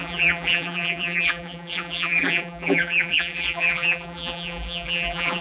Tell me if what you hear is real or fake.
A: fake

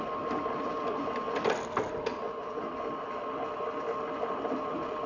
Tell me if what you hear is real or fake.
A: real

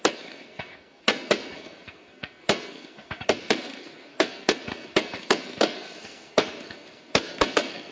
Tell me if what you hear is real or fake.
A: fake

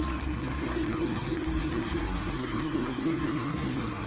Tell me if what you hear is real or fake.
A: fake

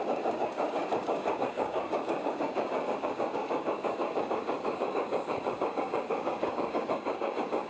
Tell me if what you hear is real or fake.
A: fake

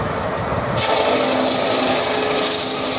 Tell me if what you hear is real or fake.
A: real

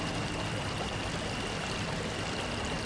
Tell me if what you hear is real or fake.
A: real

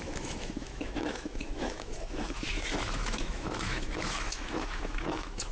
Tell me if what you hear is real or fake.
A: fake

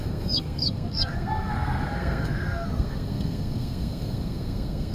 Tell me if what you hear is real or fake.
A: fake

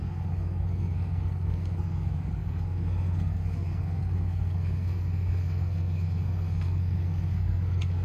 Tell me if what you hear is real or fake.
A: fake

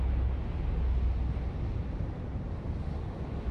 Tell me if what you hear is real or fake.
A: real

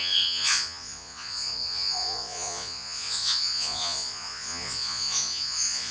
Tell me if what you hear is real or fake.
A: fake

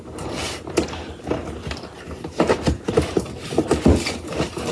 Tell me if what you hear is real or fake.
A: real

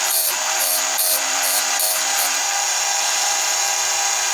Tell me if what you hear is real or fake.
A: fake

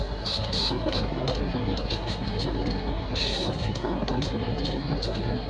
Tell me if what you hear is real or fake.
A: fake